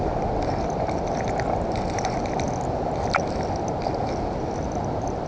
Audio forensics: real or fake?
real